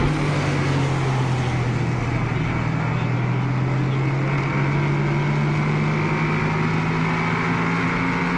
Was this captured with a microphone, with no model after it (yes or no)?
yes